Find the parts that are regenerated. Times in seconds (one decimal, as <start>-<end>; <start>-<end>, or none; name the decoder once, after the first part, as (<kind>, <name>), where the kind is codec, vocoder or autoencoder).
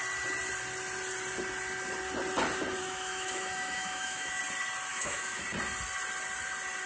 2.8-4.4 (autoencoder, DAC-VAE); 4.9-5.4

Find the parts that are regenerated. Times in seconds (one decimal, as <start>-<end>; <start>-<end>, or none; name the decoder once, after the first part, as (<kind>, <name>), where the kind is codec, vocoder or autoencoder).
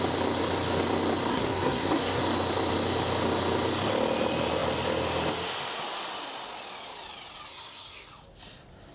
1.3-2.2 (codec, SNAC); 7.5-8.1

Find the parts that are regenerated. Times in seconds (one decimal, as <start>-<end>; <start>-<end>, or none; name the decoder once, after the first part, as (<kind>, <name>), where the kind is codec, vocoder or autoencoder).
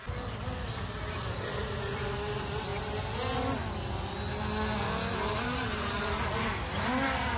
none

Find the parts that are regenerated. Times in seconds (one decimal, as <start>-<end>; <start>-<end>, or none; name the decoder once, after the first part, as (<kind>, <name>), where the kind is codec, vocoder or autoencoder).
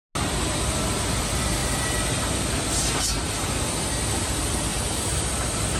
none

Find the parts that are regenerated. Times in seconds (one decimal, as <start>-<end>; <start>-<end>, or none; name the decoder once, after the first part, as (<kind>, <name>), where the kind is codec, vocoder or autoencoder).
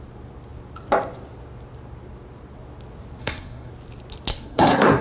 3.2-3.7 (codec, SNAC); 4.3-5.0